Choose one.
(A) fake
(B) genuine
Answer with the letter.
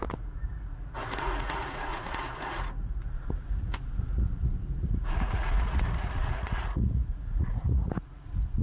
A